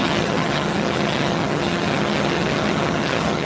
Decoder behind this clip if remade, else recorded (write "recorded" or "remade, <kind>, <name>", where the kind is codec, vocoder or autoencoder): remade, vocoder, HiFi-GAN